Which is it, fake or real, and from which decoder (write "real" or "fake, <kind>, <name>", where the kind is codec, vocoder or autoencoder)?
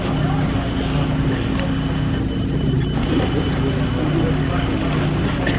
real